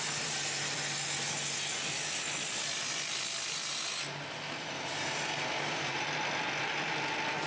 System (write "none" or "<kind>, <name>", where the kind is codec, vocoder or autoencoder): none